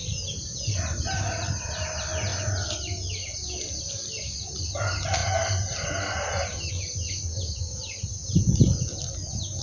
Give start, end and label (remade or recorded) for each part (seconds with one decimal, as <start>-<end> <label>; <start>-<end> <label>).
0.0-9.6 recorded